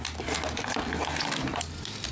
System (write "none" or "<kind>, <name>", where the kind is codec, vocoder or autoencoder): none